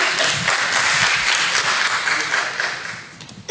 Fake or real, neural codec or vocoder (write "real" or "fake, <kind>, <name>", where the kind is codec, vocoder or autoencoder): real